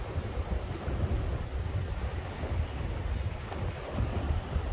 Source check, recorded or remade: recorded